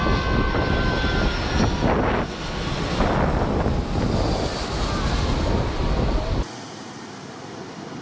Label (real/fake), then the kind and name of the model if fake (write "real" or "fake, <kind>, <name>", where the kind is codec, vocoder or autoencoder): real